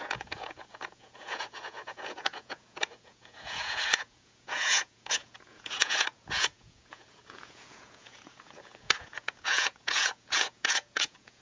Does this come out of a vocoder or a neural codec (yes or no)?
yes